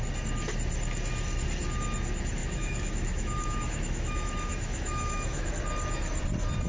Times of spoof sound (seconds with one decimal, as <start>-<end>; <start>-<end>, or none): 2.4-5.5